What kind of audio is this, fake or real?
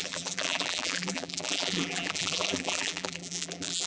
fake